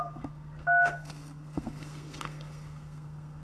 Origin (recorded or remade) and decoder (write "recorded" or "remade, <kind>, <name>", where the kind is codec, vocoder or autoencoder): remade, codec, SNAC